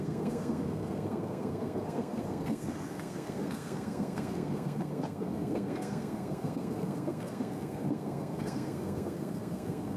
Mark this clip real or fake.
fake